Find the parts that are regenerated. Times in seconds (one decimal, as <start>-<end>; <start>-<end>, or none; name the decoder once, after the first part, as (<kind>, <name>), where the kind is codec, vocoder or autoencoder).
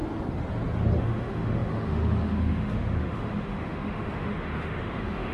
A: 1.0-5.3 (autoencoder, DAC-VAE)